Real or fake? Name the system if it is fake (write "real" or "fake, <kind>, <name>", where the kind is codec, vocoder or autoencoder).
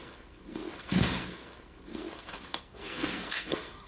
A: fake, codec, SNAC